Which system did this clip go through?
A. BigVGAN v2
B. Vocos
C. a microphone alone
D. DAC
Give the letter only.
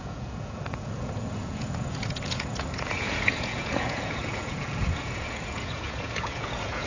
B